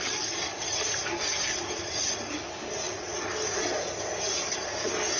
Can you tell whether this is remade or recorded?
recorded